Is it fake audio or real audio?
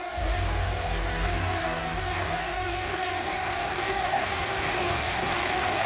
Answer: fake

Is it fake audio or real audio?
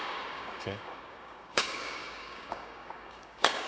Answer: fake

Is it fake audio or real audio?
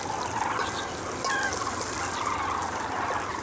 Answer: real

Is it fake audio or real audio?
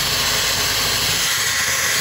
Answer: real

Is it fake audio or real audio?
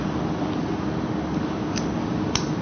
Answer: real